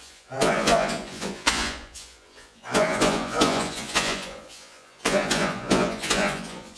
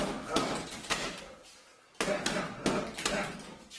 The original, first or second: second